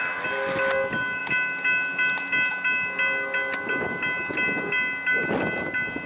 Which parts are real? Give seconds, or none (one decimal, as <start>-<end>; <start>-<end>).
0.0-6.1